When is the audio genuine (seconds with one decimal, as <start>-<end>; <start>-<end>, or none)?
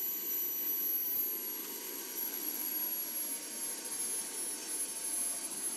0.0-1.6; 2.7-5.8